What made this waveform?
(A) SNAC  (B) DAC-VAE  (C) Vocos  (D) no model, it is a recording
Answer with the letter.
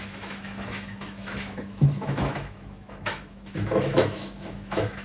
B